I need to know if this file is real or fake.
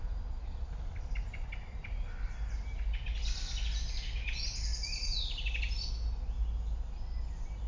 real